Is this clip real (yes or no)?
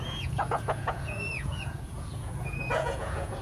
no